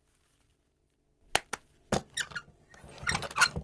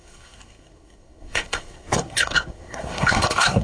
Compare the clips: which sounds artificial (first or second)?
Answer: second